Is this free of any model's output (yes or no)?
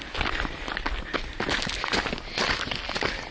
yes